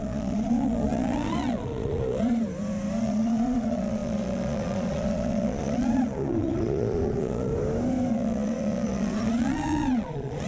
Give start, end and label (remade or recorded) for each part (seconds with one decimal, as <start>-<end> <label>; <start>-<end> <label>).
0.0-2.4 remade; 2.4-3.0 recorded; 3.0-7.5 remade; 7.5-8.1 recorded; 8.1-10.5 remade